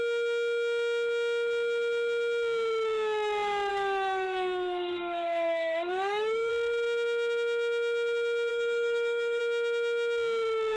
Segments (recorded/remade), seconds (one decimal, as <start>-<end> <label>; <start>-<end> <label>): 0.0-3.7 recorded; 3.7-6.5 remade; 6.5-8.5 recorded; 8.5-9.4 remade; 9.4-10.8 recorded